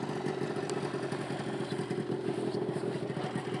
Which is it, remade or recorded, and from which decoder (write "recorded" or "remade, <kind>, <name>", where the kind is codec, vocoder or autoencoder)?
recorded